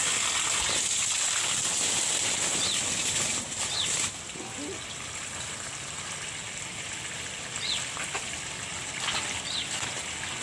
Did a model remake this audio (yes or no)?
no